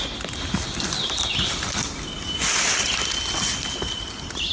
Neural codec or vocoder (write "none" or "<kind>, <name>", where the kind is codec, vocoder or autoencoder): none